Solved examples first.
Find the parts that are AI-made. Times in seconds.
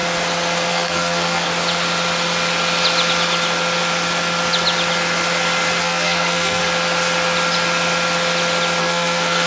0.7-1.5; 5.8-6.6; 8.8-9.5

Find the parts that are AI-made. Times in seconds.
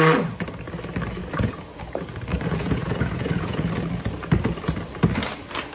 1.2-1.8; 2.3-3.7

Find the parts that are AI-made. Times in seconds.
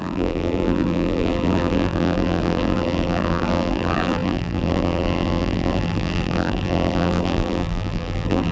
0.0-8.5